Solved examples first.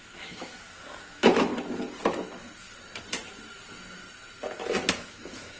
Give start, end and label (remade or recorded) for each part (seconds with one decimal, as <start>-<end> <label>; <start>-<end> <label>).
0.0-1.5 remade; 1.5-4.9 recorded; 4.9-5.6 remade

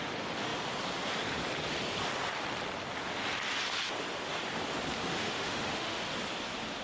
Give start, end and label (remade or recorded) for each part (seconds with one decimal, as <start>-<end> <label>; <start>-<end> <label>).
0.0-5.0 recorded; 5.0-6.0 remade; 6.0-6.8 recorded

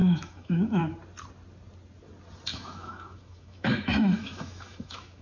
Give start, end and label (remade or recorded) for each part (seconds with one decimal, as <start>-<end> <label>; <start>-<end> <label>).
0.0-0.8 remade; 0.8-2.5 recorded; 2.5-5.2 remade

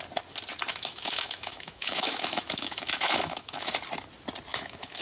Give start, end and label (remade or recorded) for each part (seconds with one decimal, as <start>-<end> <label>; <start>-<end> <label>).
0.0-0.7 recorded; 0.7-3.7 remade; 3.7-4.5 recorded; 4.5-5.0 remade

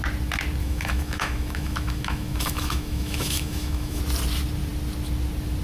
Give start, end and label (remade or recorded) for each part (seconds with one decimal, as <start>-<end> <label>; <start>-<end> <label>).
0.0-0.6 recorded; 0.6-4.0 remade; 4.0-5.6 recorded